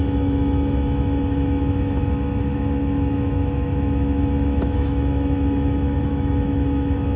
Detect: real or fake fake